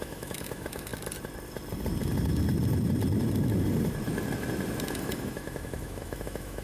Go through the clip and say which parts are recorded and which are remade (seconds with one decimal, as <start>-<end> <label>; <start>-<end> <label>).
0.0-0.9 remade; 0.9-4.9 recorded; 4.9-6.6 remade

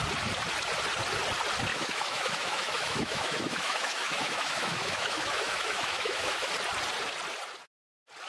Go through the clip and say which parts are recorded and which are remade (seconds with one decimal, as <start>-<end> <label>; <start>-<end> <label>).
0.0-1.7 recorded; 1.7-6.5 remade; 6.5-8.3 recorded

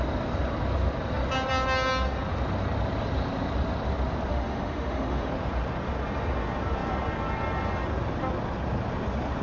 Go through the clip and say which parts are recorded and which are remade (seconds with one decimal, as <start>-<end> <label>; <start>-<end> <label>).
0.0-4.3 recorded; 4.3-5.3 remade; 5.3-9.4 recorded

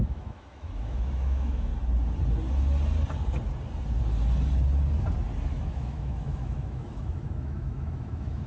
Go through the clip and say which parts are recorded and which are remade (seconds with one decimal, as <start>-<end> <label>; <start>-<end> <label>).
0.0-1.7 remade; 1.7-5.5 recorded; 5.5-8.5 remade

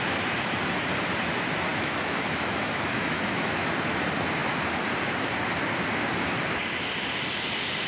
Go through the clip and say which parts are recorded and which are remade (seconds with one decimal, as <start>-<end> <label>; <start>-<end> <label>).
0.0-1.7 recorded; 1.7-3.7 remade; 3.7-7.9 recorded

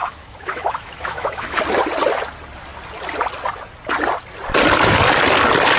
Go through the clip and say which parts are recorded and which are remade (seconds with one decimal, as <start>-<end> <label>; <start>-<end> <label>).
0.0-1.6 remade; 1.6-5.8 recorded